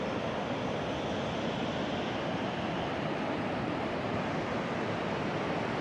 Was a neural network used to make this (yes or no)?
no